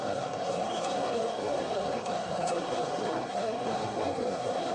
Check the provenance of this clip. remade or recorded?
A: remade